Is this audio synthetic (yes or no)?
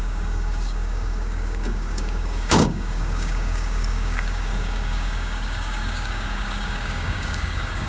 yes